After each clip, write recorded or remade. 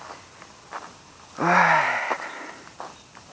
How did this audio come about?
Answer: recorded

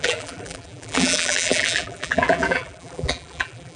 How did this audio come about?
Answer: remade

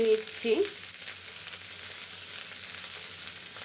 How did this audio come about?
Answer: recorded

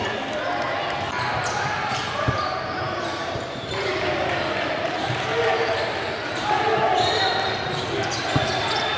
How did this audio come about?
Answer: recorded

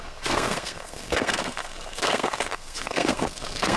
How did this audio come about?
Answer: remade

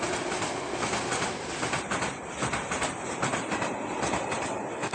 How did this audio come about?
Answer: recorded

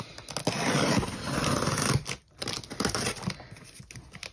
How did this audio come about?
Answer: recorded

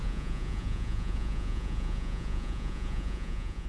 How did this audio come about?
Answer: remade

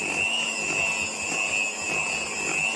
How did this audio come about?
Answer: recorded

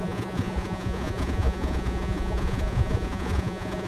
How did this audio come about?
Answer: remade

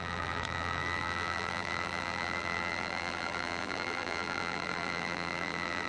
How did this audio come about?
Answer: remade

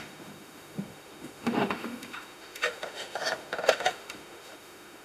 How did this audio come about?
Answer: remade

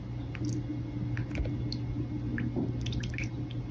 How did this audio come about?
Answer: recorded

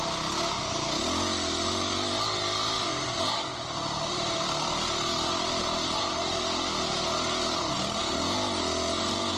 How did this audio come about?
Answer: recorded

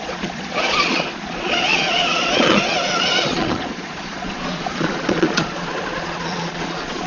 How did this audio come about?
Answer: remade